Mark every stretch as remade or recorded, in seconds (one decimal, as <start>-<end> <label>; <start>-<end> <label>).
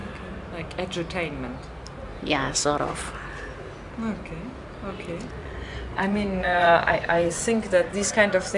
0.0-5.4 recorded; 5.4-8.1 remade; 8.1-8.6 recorded